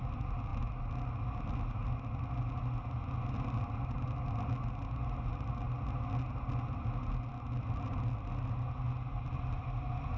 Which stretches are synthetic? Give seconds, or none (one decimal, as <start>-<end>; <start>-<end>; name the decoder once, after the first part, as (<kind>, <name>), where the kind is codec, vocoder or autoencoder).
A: none

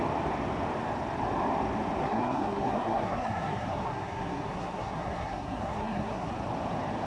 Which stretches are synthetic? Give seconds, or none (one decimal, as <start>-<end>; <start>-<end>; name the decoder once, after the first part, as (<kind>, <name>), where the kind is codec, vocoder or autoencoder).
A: 2.0-6.3 (codec, SNAC)

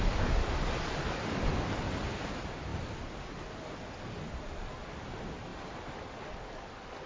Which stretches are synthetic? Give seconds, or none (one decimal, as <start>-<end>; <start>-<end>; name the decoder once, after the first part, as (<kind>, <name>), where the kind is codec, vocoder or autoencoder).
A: none

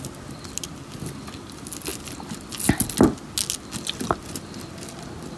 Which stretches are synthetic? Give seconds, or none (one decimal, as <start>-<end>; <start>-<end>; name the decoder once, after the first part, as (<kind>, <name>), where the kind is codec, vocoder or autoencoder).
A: none

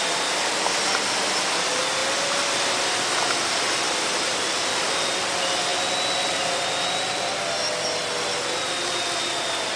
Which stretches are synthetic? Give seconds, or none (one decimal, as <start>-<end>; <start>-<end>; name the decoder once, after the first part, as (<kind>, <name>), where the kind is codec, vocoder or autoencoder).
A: none

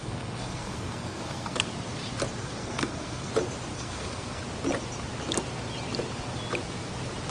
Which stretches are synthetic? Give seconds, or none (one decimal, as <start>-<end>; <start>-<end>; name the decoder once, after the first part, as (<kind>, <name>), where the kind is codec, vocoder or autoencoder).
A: 0.0-1.7 (codec, SNAC); 2.4-3.3; 3.7-4.4

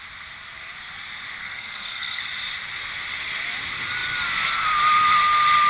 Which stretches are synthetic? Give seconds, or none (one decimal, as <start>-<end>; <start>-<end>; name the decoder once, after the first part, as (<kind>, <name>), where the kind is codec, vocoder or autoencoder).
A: 1.4-2.2 (codec, SNAC)